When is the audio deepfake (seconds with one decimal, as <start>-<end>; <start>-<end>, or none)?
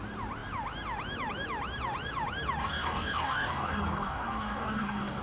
2.6-5.2